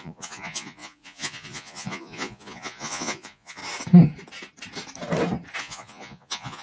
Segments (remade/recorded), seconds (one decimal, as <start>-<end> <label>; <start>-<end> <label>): 0.0-3.6 remade; 3.6-5.6 recorded; 5.6-6.6 remade